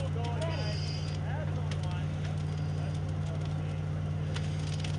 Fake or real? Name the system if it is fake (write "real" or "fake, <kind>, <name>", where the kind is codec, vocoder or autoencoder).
real